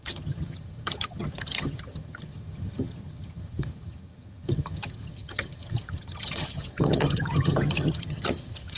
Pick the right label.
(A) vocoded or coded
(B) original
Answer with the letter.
A